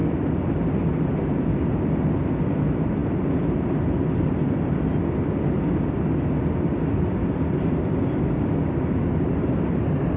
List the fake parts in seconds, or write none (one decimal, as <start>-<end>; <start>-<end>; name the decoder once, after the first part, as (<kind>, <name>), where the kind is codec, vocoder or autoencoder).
none

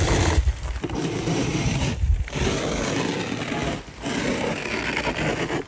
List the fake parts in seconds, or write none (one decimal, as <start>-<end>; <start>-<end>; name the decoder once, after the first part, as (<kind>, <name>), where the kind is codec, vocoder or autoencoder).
0.5-2.4 (vocoder, BigVGAN v2)

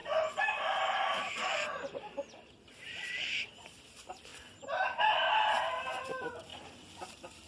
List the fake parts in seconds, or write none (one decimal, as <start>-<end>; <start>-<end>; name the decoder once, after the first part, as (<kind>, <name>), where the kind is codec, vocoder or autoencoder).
0.0-4.3 (vocoder, BigVGAN v2); 6.0-7.5

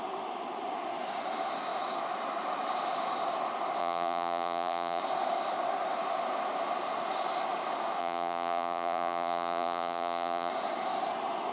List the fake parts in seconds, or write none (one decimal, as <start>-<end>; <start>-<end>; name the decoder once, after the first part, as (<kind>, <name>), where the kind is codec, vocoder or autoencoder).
3.8-5.0 (vocoder, BigVGAN v2); 8.0-10.5

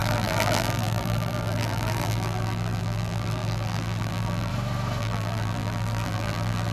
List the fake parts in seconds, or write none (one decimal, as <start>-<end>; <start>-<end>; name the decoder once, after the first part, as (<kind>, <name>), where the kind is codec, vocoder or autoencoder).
0.0-4.5 (vocoder, BigVGAN v2); 5.0-6.7

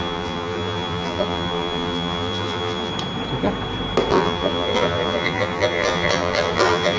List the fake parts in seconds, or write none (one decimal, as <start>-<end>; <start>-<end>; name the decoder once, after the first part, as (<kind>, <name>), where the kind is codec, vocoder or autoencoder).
0.0-2.9 (vocoder, BigVGAN v2); 4.1-7.0

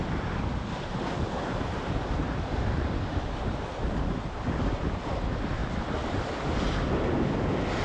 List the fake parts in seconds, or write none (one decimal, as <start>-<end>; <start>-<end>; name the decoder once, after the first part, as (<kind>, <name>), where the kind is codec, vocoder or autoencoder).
none